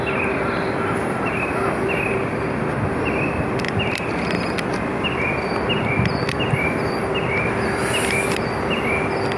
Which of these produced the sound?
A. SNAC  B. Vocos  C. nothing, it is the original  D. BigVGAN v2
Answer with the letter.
C